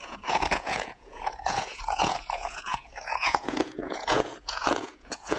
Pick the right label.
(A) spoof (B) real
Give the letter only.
A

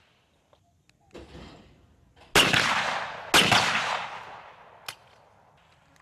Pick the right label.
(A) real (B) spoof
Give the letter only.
A